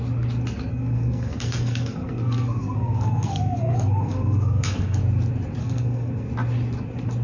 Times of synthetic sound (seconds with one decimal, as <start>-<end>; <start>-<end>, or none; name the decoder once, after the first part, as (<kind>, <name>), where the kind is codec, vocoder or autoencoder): 0.7-5.0 (codec, SNAC); 5.6-6.3